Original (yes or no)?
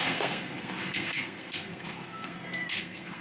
no